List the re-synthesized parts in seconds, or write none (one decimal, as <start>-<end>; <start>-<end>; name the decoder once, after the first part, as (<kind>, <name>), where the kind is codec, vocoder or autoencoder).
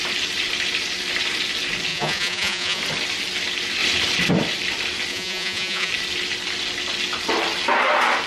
1.9-2.8 (vocoder, Vocos); 5.1-5.9